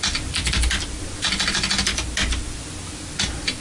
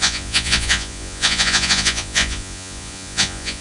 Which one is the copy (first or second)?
second